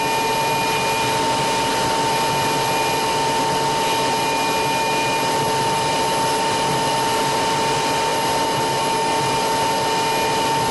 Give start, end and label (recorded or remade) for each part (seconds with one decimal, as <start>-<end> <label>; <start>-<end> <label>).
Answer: 0.0-10.7 recorded